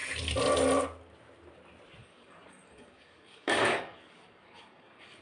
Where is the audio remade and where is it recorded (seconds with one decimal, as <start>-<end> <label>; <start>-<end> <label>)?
0.0-2.0 recorded; 2.0-5.2 remade